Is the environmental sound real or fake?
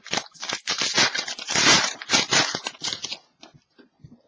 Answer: fake